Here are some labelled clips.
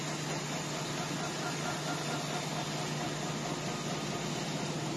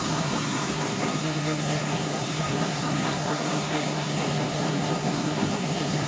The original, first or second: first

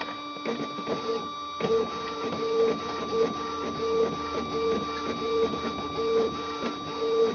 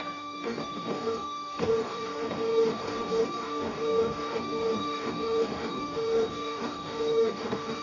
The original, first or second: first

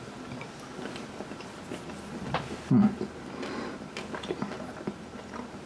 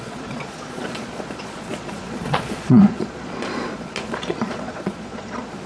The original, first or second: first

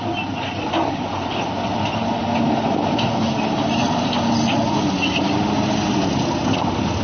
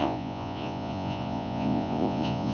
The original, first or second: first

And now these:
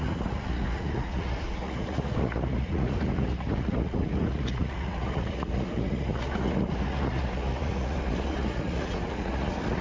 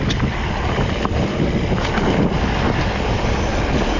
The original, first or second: second